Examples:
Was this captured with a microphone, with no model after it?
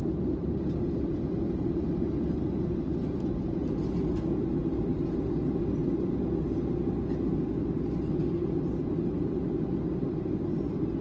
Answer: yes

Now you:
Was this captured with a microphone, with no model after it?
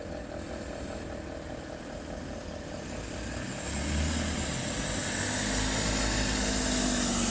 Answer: yes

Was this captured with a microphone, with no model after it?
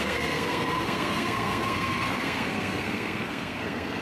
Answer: no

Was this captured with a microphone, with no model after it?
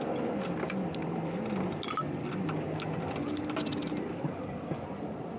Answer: yes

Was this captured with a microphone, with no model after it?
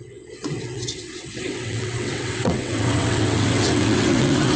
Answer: no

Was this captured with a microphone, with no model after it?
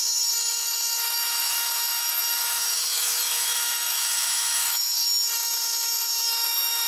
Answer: no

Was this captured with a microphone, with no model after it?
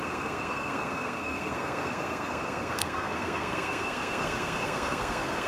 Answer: no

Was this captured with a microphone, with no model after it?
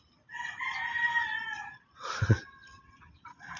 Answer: yes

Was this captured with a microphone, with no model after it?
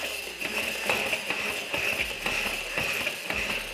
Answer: yes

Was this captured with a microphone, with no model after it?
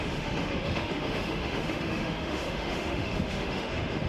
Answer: no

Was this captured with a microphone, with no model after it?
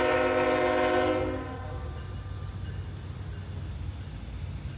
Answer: yes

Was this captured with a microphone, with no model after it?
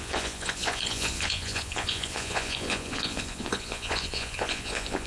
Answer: no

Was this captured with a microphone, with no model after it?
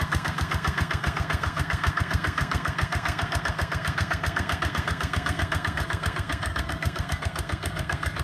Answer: no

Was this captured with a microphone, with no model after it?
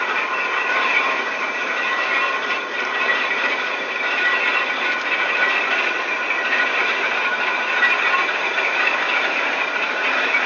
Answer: no